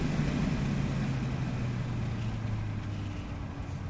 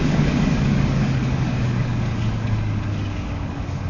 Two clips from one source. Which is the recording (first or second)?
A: first